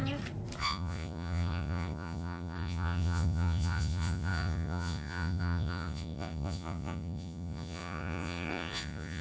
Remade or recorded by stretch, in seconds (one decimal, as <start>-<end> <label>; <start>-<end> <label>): 0.0-0.6 recorded; 0.6-9.2 remade